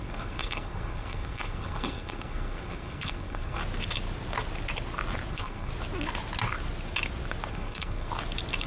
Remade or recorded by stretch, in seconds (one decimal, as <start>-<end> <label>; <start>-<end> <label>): 0.0-3.6 remade; 3.6-5.3 recorded; 5.3-5.7 remade; 5.7-7.5 recorded; 7.5-8.1 remade; 8.1-8.7 recorded